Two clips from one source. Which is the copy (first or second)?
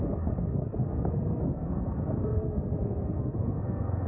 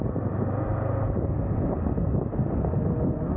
first